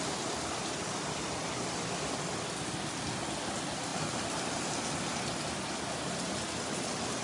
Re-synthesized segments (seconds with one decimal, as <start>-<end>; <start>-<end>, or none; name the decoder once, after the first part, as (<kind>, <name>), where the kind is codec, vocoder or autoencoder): none